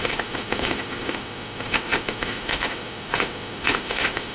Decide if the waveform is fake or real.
fake